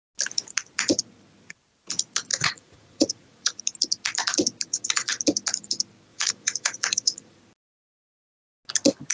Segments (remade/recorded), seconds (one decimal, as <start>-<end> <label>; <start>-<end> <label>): 0.0-2.3 recorded; 2.3-3.6 remade; 3.6-4.7 recorded; 4.7-5.2 remade; 5.2-6.1 recorded; 6.1-7.4 remade; 7.4-9.1 recorded